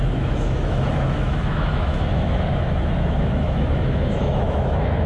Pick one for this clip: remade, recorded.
remade